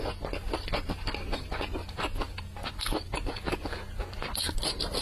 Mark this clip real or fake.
real